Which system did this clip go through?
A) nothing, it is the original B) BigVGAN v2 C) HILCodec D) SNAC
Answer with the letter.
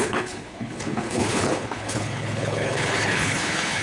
C